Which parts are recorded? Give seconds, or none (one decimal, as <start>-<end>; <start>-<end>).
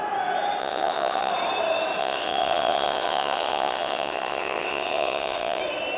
0.0-0.6; 1.3-2.0; 5.6-6.0